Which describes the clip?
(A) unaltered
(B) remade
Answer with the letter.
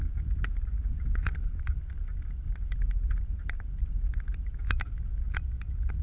A